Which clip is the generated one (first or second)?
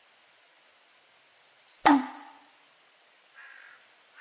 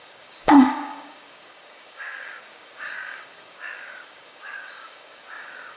second